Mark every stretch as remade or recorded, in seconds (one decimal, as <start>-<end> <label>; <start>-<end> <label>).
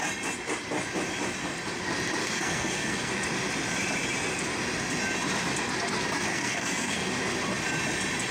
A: 0.0-2.2 recorded; 2.2-3.1 remade; 3.1-6.3 recorded; 6.3-7.1 remade; 7.1-8.3 recorded